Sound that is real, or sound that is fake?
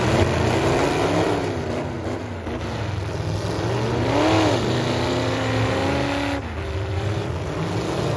real